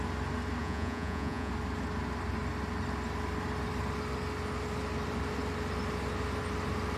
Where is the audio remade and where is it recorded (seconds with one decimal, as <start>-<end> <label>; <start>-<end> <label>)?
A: 0.0-0.6 recorded; 0.6-1.5 remade; 1.5-7.0 recorded